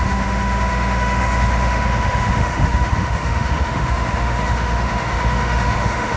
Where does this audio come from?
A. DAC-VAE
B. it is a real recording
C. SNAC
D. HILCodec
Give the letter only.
A